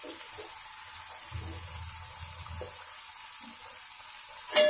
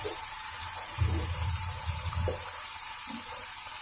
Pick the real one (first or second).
first